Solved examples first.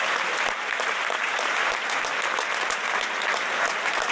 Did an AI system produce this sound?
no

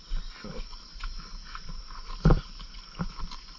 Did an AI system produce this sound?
no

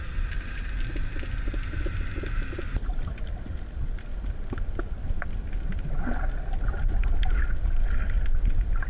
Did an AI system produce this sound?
no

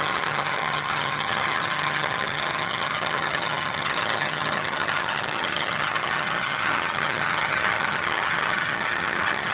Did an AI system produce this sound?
yes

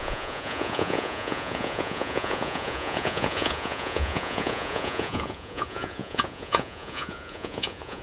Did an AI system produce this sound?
yes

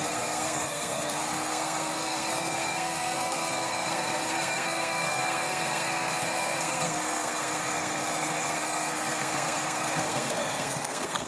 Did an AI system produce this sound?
yes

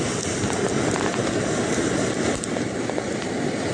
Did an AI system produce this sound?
no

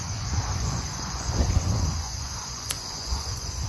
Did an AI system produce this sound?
yes